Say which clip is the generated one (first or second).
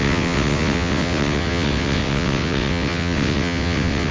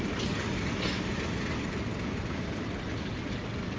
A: first